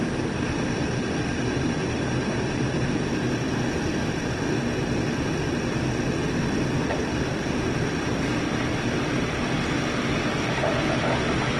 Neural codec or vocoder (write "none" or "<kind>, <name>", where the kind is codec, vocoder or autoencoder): none